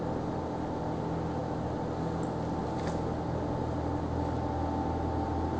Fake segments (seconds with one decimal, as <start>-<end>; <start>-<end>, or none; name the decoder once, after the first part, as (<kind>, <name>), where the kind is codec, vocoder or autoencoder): none